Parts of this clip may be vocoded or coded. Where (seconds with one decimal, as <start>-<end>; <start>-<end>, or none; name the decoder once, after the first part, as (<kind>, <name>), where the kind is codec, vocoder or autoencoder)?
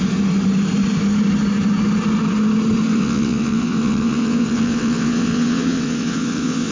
2.9-6.7 (vocoder, WaveNeXt)